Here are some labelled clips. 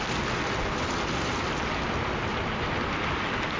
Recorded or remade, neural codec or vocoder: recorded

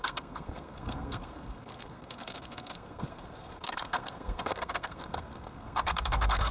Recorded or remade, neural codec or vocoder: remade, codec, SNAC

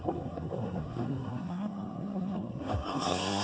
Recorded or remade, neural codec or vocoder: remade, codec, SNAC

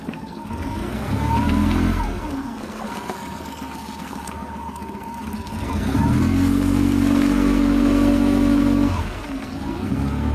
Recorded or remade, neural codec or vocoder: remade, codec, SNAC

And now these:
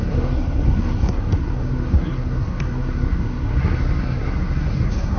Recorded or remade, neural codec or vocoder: remade, codec, SNAC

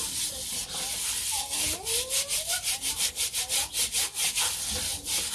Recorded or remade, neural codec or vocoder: recorded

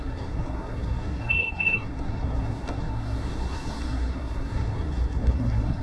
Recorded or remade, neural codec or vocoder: remade, codec, SNAC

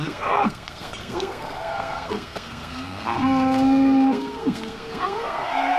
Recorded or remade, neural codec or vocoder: remade, codec, SNAC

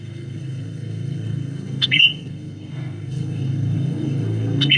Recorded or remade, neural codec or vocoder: remade, codec, SNAC